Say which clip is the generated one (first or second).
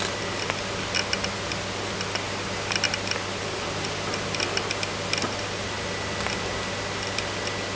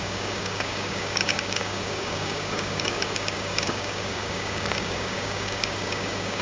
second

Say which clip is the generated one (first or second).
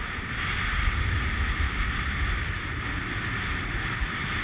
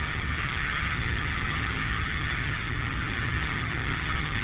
second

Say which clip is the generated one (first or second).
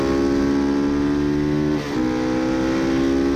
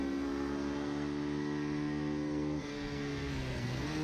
second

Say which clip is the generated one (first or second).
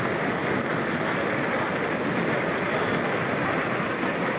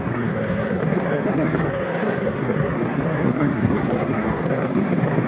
second